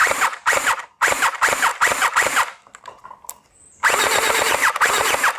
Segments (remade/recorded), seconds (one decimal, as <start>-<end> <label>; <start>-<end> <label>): 0.0-1.0 remade; 1.0-1.7 recorded; 1.7-4.9 remade; 4.9-5.4 recorded